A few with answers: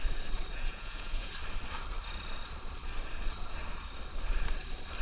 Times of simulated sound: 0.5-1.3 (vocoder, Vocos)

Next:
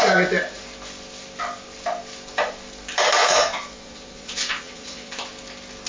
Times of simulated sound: 3.2-5.1 (vocoder, Vocos)

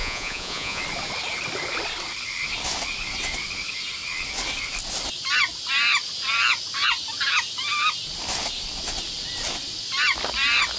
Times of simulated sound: 0.0-0.8 (vocoder, Vocos)